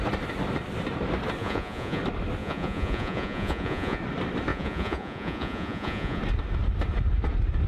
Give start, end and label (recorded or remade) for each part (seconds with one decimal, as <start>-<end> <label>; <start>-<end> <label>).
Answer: 0.0-1.4 recorded; 1.4-2.0 remade; 2.0-2.4 recorded; 2.4-4.0 remade; 4.0-4.5 recorded; 4.5-6.2 remade; 6.2-7.7 recorded